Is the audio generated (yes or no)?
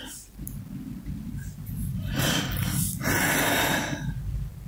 no